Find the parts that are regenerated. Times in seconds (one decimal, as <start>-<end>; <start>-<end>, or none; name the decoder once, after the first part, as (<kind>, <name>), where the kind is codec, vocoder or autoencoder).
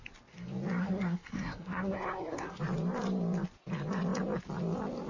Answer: 0.8-2.6 (codec, SNAC)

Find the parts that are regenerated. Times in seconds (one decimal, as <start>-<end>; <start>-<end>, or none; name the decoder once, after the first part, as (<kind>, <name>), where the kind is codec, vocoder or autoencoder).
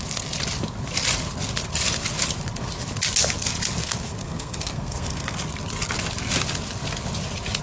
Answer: 3.8-5.4 (codec, SNAC)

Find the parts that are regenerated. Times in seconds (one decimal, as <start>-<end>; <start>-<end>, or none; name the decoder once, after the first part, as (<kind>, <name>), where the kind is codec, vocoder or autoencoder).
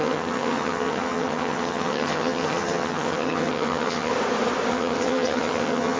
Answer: 0.0-4.1 (vocoder, HiFi-GAN); 4.7-6.0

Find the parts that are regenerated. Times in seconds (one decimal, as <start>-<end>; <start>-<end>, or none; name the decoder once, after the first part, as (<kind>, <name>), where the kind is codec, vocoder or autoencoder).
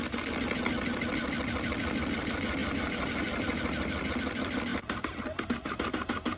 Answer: none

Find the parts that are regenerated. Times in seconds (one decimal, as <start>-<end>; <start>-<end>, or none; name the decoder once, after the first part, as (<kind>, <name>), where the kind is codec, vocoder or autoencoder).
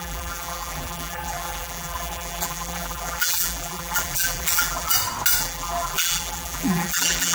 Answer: 0.0-4.9 (vocoder, BigVGAN v2); 5.4-7.3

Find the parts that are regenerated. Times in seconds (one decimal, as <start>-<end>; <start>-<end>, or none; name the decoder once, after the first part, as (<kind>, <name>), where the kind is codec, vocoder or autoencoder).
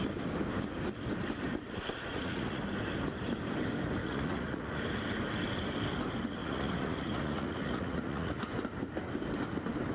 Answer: 2.1-2.6 (vocoder, Vocos); 4.0-4.8; 6.4-8.5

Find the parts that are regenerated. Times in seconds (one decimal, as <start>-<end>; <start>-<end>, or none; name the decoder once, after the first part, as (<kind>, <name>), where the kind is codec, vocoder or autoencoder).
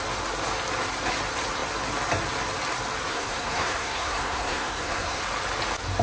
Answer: 3.1-5.2 (codec, SNAC)